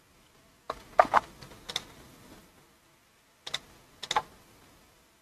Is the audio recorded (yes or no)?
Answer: yes